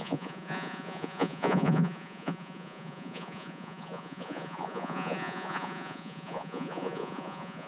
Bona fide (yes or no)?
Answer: no